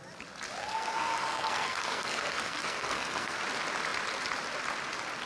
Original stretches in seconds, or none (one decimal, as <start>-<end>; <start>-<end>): 0.0-0.6; 3.4-5.3